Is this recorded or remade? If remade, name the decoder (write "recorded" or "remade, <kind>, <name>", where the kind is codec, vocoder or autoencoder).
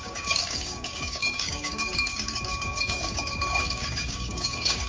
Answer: remade, codec, DAC